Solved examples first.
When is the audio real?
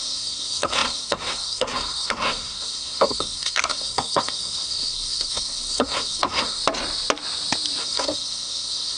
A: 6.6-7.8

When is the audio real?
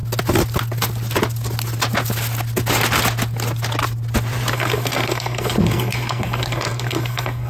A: 0.0-4.5